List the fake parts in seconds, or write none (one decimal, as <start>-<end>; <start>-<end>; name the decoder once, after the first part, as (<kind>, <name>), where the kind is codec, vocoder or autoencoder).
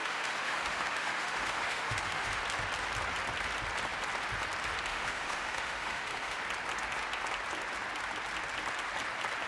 0.0-2.4 (autoencoder, DAC-VAE); 4.9-6.4